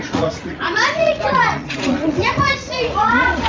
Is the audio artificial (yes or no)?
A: yes